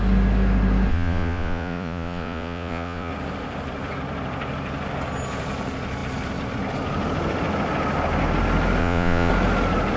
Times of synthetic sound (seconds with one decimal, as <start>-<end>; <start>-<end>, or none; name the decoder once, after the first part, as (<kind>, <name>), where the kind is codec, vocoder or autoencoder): 0.9-3.1 (vocoder, Vocos); 8.8-9.3